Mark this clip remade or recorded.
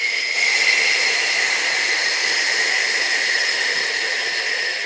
recorded